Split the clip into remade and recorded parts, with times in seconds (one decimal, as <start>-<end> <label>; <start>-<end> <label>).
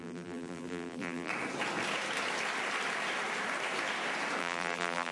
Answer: 0.0-1.3 remade; 1.3-4.4 recorded; 4.4-5.1 remade